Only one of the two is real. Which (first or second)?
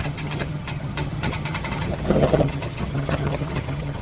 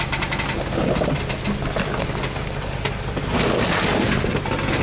second